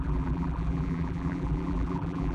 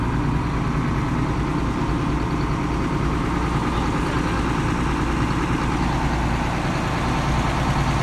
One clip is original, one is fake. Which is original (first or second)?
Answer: second